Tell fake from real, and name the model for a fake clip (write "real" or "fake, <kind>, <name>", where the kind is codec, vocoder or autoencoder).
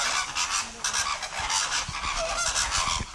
real